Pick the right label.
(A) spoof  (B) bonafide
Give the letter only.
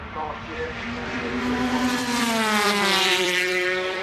A